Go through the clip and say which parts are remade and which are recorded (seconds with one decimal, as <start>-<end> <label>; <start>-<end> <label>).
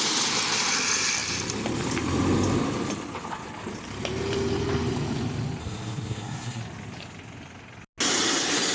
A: 0.0-5.6 recorded; 5.6-6.6 remade; 6.6-8.7 recorded